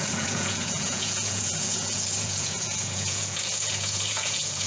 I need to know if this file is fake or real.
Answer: fake